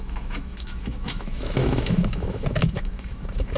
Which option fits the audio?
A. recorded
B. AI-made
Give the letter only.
B